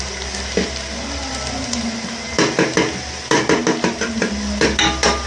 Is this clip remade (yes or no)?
no